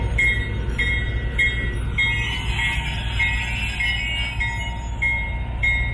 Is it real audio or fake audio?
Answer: real